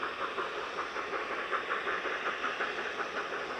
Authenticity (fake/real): real